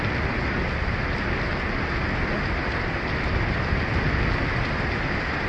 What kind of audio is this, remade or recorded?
recorded